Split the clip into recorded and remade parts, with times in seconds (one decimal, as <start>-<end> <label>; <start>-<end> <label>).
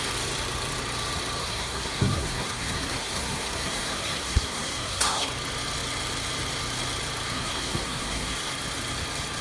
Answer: 0.0-1.4 recorded; 1.4-5.3 remade; 5.3-7.3 recorded; 7.3-8.5 remade; 8.5-9.4 recorded